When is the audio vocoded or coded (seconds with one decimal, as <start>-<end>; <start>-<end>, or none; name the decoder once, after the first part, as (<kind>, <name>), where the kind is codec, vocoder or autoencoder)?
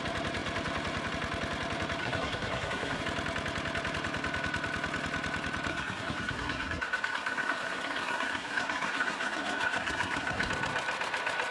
2.0-3.0 (codec, SNAC); 5.7-10.5